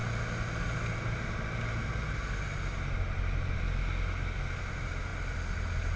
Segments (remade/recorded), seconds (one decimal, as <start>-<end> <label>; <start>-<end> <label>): 0.0-6.0 recorded